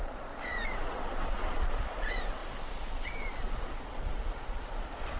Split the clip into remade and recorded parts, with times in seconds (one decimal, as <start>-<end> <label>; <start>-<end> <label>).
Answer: 0.0-5.2 remade